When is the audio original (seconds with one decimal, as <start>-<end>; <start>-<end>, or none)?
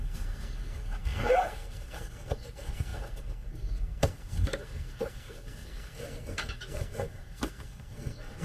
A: none